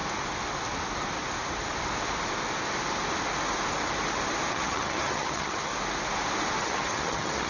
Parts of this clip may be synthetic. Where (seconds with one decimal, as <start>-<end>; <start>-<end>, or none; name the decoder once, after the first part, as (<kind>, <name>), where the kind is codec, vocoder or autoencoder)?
4.5-5.7 (vocoder, HiFi-GAN); 6.6-7.5

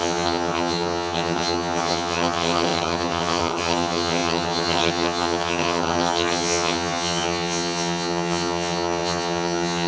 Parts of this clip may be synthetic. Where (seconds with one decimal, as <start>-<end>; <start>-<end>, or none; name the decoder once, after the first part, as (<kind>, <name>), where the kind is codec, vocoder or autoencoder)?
0.0-9.9 (vocoder, HiFi-GAN)

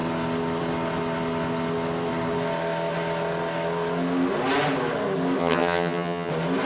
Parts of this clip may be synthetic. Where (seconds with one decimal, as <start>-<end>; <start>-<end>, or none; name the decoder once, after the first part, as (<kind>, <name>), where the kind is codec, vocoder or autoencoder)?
5.4-6.3 (vocoder, HiFi-GAN)

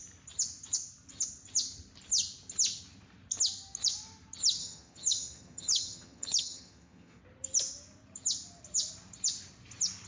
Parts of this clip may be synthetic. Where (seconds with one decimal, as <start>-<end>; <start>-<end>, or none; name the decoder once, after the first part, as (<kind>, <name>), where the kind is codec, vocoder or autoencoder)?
4.6-7.2 (vocoder, HiFi-GAN)

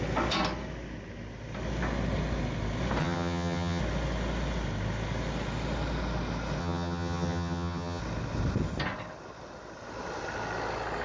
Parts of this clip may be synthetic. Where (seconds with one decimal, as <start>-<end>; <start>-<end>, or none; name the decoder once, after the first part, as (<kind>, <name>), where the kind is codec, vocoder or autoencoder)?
3.0-3.8 (vocoder, HiFi-GAN); 6.6-8.0

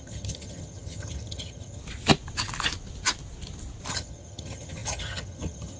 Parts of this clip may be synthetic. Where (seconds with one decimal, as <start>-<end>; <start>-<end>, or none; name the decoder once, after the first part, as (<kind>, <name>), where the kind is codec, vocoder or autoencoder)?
0.0-1.8 (vocoder, HiFi-GAN); 3.9-5.8